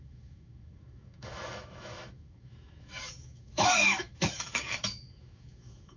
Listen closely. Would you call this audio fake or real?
fake